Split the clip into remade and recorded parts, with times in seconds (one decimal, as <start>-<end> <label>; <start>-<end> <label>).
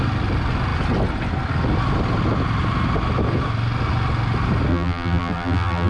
0.0-4.7 recorded; 4.7-5.9 remade